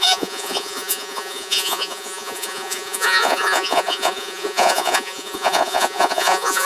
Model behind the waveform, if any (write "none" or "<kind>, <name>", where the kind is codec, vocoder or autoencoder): vocoder, Vocos